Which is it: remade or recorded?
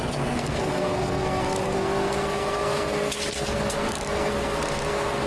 remade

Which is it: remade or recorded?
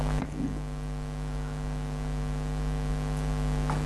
recorded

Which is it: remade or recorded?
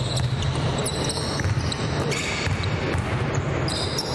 recorded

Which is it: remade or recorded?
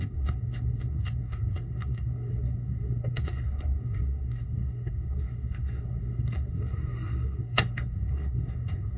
remade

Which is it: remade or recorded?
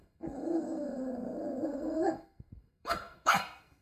remade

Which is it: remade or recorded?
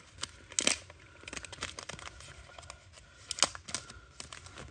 recorded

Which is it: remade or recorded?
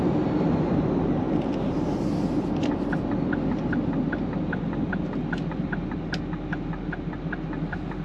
recorded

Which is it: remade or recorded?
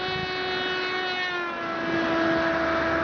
recorded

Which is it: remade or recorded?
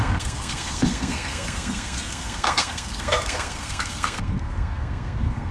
remade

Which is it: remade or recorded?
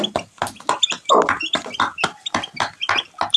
recorded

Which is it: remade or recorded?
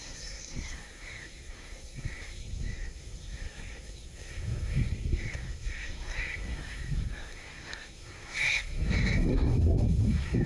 remade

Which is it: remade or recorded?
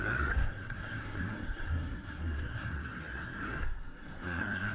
remade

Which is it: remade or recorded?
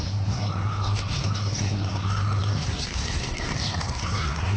remade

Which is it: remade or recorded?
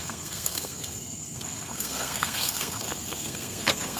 remade